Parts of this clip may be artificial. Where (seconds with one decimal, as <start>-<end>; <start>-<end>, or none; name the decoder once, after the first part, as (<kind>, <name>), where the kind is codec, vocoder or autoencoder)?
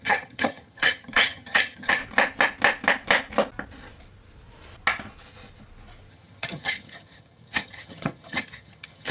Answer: 0.0-2.0 (vocoder, HiFi-GAN); 6.1-9.1